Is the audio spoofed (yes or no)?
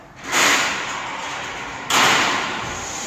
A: yes